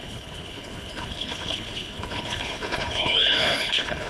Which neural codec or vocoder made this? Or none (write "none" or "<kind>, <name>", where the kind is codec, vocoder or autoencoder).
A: codec, HILCodec